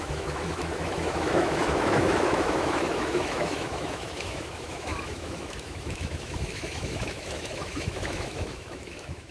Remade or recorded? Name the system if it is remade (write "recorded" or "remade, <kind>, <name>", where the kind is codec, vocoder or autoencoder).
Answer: remade, autoencoder, DAC-VAE